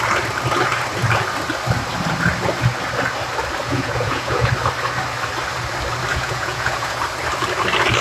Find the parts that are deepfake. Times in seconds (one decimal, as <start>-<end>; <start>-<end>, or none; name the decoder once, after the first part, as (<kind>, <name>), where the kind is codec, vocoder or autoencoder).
3.6-4.5 (vocoder, Vocos); 6.1-7.0